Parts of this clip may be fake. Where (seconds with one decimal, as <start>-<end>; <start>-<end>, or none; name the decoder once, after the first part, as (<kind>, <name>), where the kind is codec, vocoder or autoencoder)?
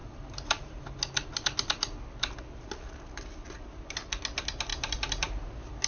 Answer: 0.0-0.8 (vocoder, BigVGAN v2); 4.7-5.5